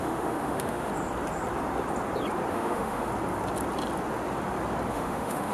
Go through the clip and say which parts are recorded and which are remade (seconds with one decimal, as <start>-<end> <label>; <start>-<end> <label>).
0.0-0.9 remade; 0.9-2.5 recorded; 2.5-3.1 remade; 3.1-4.9 recorded; 4.9-5.5 remade